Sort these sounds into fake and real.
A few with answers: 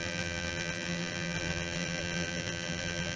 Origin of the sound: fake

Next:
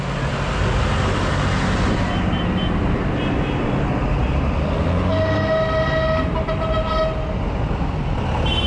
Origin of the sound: real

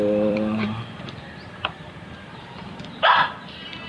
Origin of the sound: fake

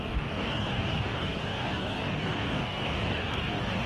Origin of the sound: fake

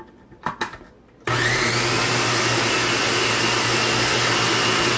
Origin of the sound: real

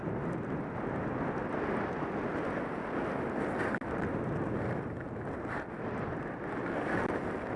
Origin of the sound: real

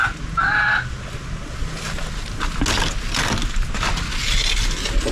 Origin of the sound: real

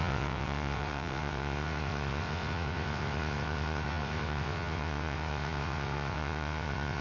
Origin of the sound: fake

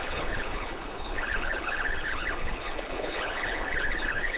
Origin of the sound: fake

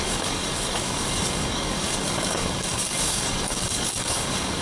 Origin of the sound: fake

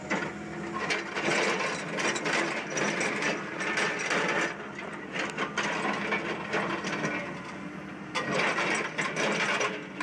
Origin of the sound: real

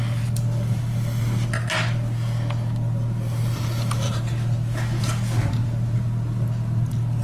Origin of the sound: real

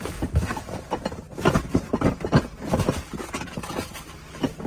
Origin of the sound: real